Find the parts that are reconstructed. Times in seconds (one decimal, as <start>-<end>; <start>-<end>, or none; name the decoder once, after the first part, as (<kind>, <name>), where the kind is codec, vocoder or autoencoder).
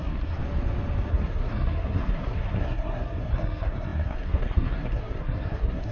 0.0-0.4 (codec, SNAC); 1.1-5.9